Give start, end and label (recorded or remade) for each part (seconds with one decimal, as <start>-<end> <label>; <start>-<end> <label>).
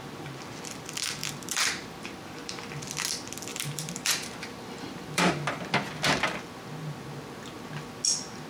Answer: 0.0-1.2 recorded; 1.2-2.5 remade; 2.5-3.5 recorded; 3.5-5.3 remade; 5.3-8.5 recorded